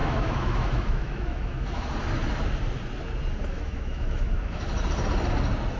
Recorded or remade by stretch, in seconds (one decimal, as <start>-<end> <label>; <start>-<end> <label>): 0.0-1.9 remade; 1.9-3.5 recorded; 3.5-4.6 remade; 4.6-5.8 recorded